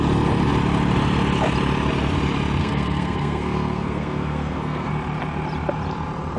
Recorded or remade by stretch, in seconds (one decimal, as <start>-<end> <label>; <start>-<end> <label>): 0.0-2.6 recorded; 2.6-4.9 remade; 4.9-6.4 recorded